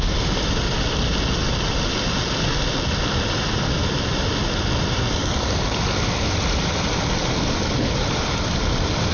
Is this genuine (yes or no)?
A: yes